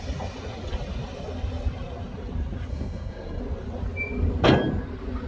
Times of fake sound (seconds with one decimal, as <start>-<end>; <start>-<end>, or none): 2.7-3.4